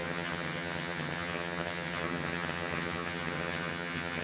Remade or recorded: remade